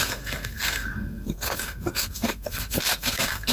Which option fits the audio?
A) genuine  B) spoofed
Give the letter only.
B